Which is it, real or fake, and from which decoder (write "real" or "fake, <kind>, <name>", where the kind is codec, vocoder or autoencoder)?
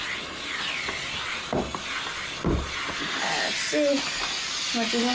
real